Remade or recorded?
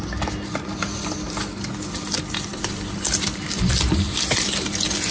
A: recorded